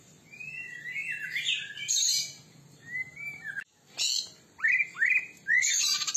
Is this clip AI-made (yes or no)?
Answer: no